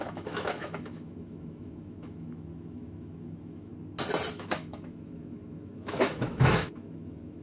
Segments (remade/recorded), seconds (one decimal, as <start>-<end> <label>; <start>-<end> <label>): 0.0-3.7 remade; 3.7-4.3 recorded; 4.3-7.4 remade